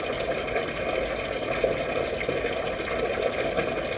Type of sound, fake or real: real